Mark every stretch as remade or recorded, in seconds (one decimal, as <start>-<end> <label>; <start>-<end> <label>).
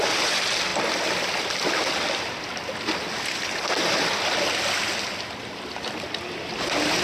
0.0-7.0 recorded